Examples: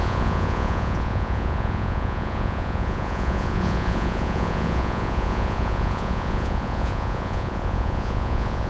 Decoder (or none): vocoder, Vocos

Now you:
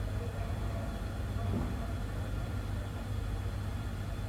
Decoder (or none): none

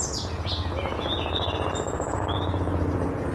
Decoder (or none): vocoder, Vocos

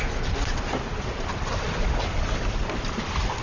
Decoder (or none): none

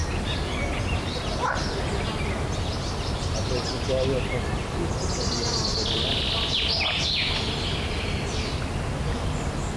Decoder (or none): none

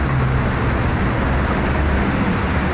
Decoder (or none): none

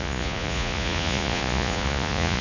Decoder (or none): vocoder, Vocos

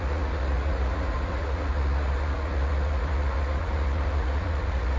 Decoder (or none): vocoder, Vocos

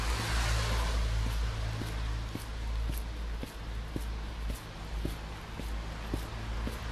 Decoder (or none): none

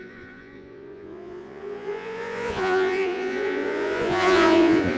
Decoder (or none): vocoder, Vocos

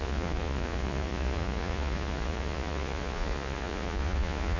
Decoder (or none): vocoder, Vocos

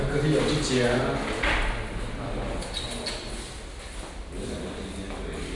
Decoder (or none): none